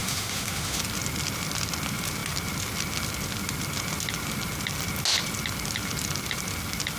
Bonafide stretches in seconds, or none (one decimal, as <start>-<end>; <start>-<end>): 0.8-7.0